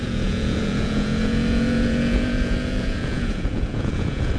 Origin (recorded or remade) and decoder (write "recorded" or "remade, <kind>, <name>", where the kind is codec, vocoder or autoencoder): remade, vocoder, Vocos